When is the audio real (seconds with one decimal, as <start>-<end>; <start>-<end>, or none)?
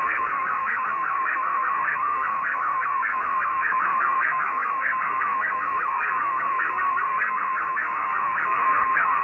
none